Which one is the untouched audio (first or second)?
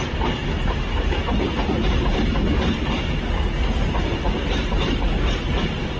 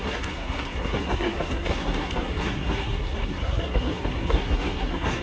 first